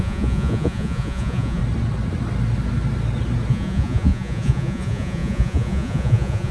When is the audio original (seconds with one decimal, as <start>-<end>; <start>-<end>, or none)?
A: 1.6-3.5